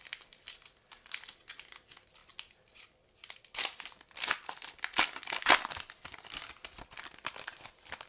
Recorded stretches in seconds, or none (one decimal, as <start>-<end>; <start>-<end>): 0.0-8.1